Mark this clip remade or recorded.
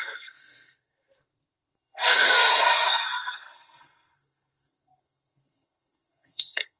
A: remade